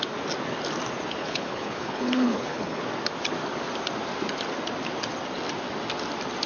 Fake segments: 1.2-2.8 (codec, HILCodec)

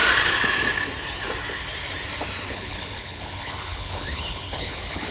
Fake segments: 2.5-5.1 (codec, HILCodec)

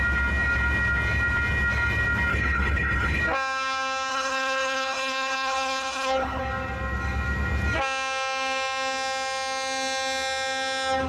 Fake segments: 2.3-3.2 (codec, HILCodec); 4.1-6.4